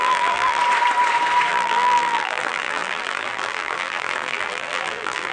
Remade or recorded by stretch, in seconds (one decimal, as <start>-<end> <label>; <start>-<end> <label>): 0.0-0.6 remade; 0.6-1.5 recorded; 1.5-5.3 remade